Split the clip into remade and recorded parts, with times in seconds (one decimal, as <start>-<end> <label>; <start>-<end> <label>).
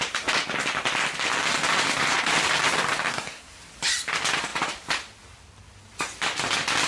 0.0-3.1 recorded; 3.1-3.6 remade; 3.6-6.9 recorded